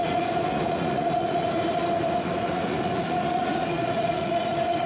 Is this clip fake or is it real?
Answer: fake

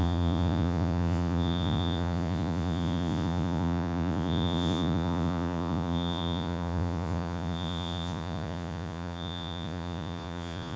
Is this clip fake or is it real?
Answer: fake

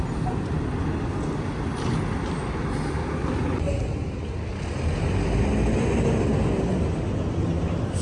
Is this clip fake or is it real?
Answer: real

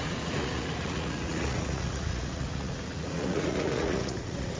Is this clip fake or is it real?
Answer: fake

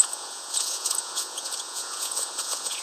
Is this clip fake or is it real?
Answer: fake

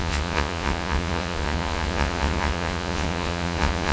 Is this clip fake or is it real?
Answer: fake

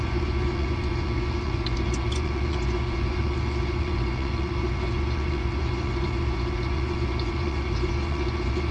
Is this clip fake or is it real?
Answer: fake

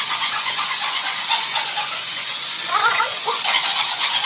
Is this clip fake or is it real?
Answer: fake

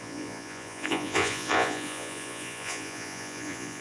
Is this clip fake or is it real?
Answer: fake